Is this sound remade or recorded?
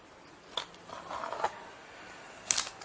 recorded